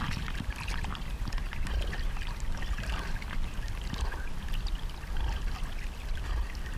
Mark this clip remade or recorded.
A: recorded